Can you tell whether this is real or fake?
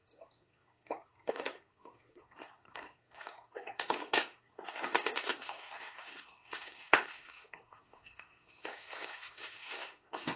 fake